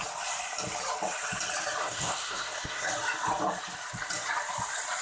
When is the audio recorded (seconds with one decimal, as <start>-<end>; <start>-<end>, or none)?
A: 0.0-1.8; 2.9-5.0